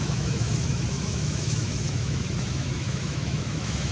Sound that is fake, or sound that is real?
fake